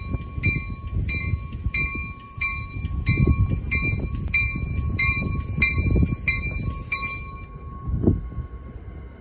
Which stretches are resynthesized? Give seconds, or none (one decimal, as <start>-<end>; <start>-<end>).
2.0-5.3

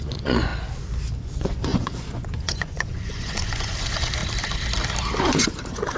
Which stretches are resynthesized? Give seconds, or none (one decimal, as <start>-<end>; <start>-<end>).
0.0-0.5; 1.2-4.2; 5.2-6.0

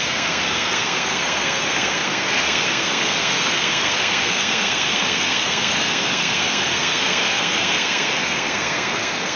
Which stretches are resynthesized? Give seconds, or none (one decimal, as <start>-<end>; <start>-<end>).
0.0-9.4